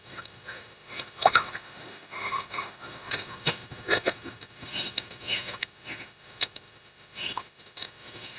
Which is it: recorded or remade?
remade